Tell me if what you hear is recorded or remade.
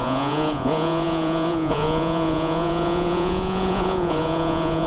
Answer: remade